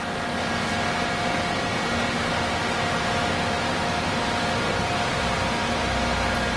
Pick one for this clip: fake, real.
real